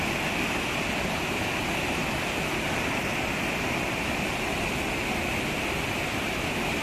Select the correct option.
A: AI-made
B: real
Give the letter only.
A